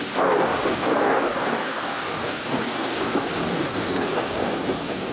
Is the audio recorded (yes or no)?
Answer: no